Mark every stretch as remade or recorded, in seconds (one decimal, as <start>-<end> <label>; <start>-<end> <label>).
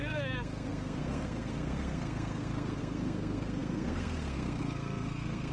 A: 0.0-5.5 remade